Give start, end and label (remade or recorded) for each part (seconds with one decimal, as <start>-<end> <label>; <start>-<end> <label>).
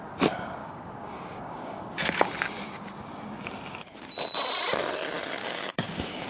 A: 0.0-0.6 recorded; 0.6-2.3 remade; 2.3-5.4 recorded; 5.4-6.3 remade